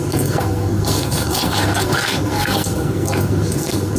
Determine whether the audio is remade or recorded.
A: remade